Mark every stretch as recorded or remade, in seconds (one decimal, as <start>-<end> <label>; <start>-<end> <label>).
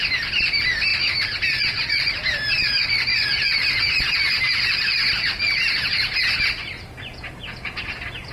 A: 0.0-0.9 recorded; 0.9-2.1 remade; 2.1-3.1 recorded; 3.1-5.0 remade; 5.0-8.3 recorded